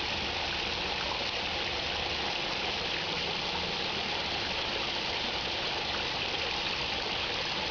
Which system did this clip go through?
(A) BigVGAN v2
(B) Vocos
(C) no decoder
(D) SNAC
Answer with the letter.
C